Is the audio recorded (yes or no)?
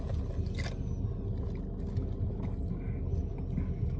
yes